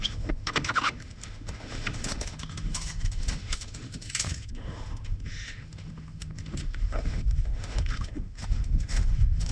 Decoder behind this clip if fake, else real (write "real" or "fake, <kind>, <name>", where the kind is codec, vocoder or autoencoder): fake, autoencoder, DAC-VAE